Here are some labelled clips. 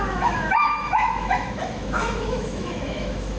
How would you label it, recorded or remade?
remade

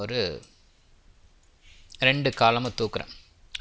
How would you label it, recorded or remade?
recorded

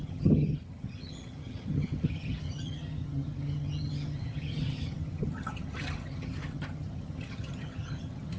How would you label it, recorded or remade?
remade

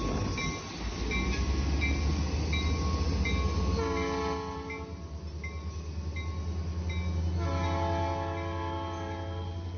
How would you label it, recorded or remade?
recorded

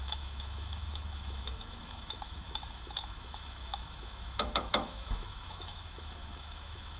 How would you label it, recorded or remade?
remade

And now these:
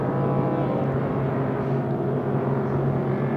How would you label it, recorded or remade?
recorded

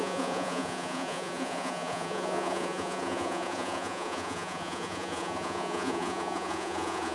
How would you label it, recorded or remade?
remade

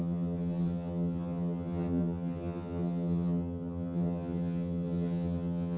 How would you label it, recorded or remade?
remade